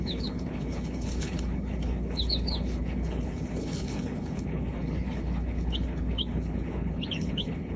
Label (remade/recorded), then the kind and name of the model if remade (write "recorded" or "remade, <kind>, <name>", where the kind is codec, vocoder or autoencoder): remade, codec, HILCodec